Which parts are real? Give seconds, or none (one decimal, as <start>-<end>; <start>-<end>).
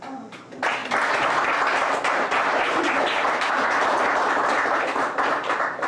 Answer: 0.8-2.5